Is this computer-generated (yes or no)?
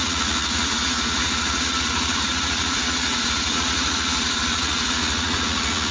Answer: yes